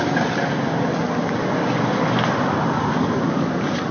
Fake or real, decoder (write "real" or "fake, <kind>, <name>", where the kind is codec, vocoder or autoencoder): real